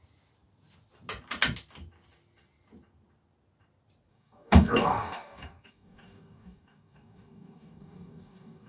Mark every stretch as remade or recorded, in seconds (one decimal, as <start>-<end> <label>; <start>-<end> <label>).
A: 0.0-4.1 recorded; 4.1-8.7 remade